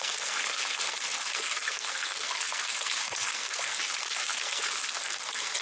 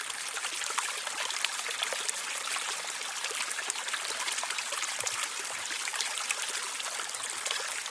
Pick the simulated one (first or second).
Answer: first